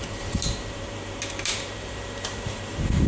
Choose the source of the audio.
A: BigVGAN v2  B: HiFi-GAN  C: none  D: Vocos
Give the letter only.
A